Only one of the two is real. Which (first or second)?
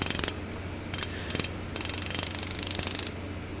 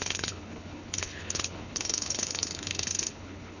first